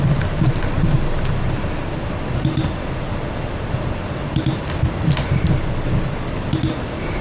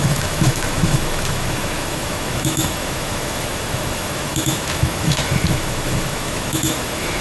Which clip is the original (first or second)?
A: first